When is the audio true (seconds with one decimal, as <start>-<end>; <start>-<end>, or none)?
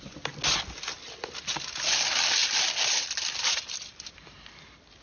0.0-2.4; 4.6-5.0